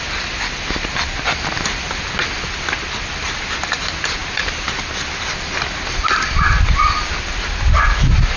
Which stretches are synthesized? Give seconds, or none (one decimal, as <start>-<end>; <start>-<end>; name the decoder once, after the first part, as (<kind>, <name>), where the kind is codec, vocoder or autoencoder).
none